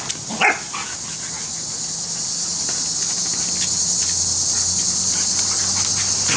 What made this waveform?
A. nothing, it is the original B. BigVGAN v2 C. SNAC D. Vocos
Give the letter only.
A